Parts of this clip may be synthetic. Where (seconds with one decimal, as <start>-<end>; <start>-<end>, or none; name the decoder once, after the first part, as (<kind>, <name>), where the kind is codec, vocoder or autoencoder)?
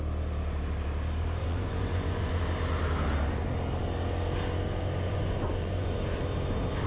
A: 1.4-2.4 (vocoder, Vocos); 5.1-5.9